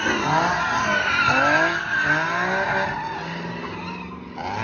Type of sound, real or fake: real